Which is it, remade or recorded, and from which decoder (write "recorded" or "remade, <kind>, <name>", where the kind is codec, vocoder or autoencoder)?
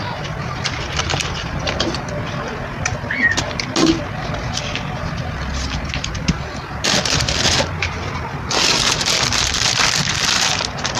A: recorded